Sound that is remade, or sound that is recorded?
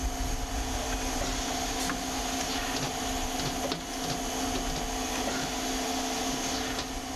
recorded